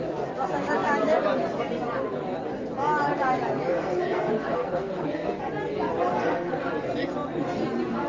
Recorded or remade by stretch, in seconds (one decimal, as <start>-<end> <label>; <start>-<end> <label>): 0.0-3.7 recorded; 3.7-5.4 remade; 5.4-6.1 recorded; 6.1-6.7 remade; 6.7-8.1 recorded